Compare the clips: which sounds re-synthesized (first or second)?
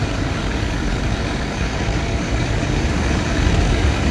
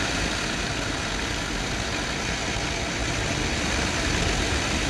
first